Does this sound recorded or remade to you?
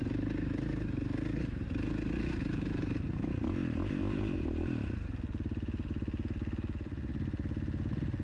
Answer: recorded